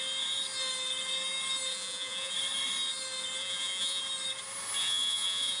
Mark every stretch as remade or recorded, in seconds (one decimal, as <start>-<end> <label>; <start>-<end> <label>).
0.0-1.7 recorded; 1.7-2.3 remade; 2.3-3.4 recorded; 3.4-4.0 remade; 4.0-4.8 recorded; 4.8-5.6 remade